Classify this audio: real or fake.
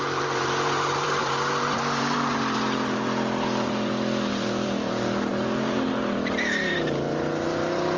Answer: fake